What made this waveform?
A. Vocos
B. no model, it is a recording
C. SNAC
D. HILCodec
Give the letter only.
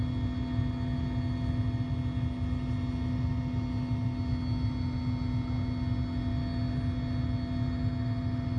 B